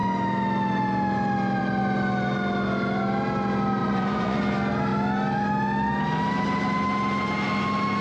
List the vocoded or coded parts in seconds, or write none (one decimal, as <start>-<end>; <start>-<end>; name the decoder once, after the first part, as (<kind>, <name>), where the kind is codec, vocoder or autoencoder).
3.8-4.4 (vocoder, Vocos)

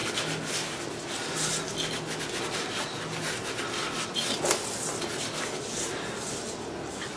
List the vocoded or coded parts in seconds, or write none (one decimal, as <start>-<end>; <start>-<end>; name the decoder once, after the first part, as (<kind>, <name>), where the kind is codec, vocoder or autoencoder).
none

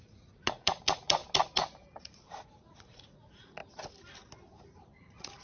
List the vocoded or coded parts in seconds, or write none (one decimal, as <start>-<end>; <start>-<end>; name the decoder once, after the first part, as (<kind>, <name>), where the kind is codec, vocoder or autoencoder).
0.0-1.2 (vocoder, Vocos); 2.0-3.6; 5.0-5.4

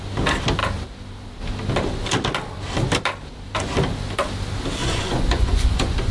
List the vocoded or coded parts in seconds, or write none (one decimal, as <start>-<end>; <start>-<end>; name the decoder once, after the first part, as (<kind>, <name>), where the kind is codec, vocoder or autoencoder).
4.8-6.1 (vocoder, Vocos)

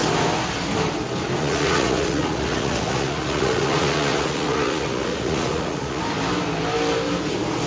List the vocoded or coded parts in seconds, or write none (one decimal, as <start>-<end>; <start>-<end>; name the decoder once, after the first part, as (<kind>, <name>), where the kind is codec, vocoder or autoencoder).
1.4-6.0 (vocoder, Vocos)

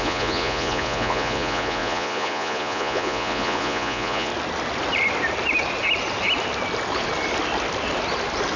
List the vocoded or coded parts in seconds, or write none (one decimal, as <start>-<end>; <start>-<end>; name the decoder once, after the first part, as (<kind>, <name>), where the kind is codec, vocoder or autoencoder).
0.0-4.3 (vocoder, Vocos)

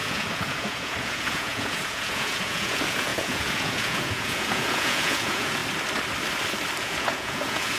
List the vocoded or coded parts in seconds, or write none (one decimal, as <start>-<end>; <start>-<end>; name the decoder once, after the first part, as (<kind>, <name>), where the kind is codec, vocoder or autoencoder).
0.0-5.6 (vocoder, Vocos); 6.8-7.8

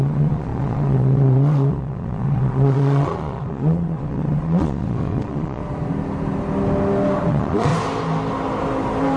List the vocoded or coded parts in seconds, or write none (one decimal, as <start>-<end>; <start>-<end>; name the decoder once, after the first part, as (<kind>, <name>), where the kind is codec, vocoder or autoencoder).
0.0-5.6 (vocoder, Vocos); 7.3-7.7